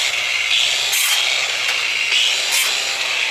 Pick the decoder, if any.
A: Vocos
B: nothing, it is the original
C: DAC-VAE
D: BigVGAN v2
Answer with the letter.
B